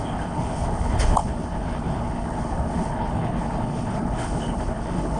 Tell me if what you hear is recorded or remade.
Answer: remade